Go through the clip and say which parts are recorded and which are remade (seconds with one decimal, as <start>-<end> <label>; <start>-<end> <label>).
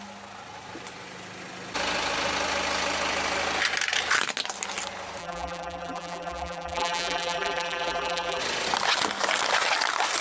0.0-5.2 recorded; 5.2-8.4 remade; 8.4-10.2 recorded